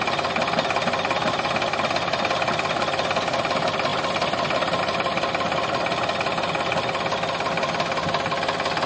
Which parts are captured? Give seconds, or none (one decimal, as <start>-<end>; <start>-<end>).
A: 0.0-8.9